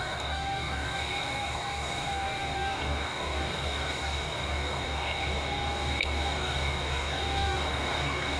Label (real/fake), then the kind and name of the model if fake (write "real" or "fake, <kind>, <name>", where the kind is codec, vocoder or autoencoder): fake, codec, DAC